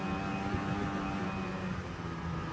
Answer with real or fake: real